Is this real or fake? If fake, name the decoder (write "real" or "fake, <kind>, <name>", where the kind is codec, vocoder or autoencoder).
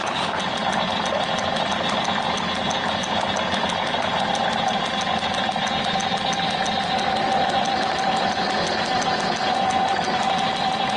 real